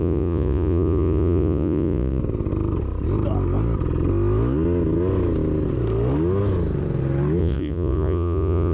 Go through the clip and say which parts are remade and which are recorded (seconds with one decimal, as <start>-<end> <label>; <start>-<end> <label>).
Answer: 0.0-2.2 remade; 2.2-7.4 recorded; 7.4-8.7 remade